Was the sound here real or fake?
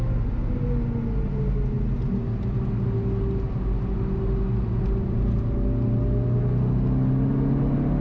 real